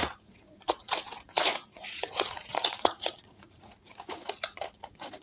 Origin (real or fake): fake